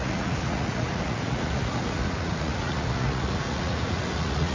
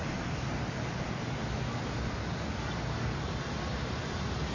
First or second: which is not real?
first